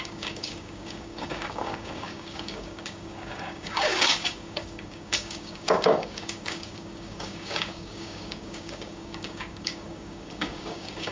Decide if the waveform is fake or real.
fake